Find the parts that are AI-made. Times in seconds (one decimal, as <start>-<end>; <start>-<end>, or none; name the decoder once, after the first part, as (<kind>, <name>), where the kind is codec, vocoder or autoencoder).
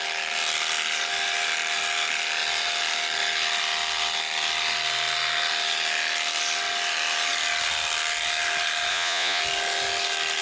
8.9-9.4 (vocoder, Vocos)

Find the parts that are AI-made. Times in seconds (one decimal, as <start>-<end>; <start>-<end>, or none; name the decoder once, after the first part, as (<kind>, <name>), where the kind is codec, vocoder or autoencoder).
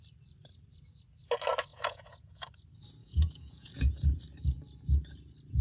1.7-2.5 (vocoder, Vocos); 3.0-4.2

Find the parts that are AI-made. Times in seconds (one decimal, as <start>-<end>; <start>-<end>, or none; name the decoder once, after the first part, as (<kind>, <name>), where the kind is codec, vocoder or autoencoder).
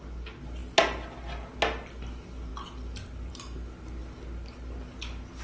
none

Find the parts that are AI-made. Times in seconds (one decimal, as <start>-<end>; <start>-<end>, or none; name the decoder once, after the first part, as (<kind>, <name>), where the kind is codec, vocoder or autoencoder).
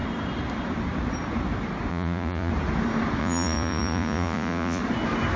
1.9-2.5 (vocoder, Vocos); 3.2-4.8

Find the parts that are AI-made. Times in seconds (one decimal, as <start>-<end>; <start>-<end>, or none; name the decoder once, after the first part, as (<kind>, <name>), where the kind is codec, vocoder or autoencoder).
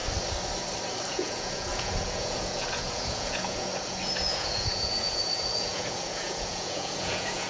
1.1-7.5 (vocoder, Vocos)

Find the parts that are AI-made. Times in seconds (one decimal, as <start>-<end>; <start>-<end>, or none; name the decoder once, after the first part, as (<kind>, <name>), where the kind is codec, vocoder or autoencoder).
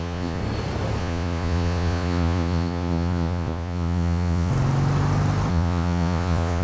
0.0-0.4 (vocoder, Vocos); 1.0-4.5; 5.5-6.6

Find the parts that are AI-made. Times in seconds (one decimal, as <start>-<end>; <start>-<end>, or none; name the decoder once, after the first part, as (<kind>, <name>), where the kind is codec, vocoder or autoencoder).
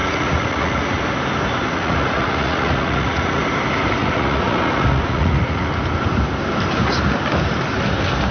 0.0-1.0 (vocoder, Vocos); 1.6-3.4; 4.0-5.7